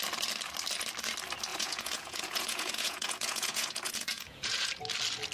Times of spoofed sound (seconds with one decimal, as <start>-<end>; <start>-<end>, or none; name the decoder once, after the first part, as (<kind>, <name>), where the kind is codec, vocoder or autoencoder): 1.5-4.7 (vocoder, Vocos)